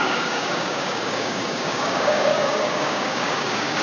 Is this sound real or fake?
fake